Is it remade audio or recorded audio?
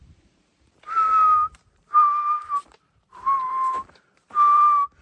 remade